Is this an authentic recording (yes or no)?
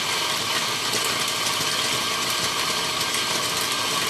yes